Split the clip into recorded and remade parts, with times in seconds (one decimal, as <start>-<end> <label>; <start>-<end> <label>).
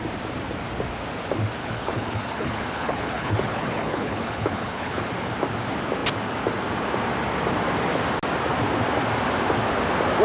0.0-1.6 recorded; 1.6-5.0 remade; 5.0-10.2 recorded